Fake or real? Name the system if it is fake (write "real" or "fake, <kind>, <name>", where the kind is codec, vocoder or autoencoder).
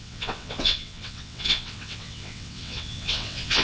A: fake, vocoder, WaveNeXt